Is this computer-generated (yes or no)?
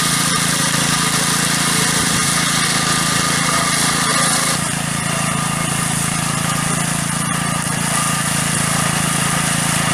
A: no